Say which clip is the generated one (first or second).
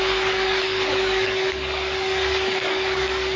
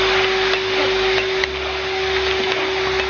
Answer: first